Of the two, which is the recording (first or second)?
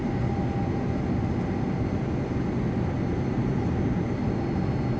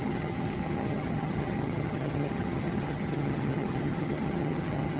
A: first